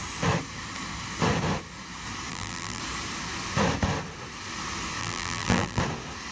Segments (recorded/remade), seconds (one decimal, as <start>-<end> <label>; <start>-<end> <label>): 0.0-2.3 recorded; 2.3-2.8 remade; 2.8-5.0 recorded; 5.0-5.8 remade; 5.8-6.3 recorded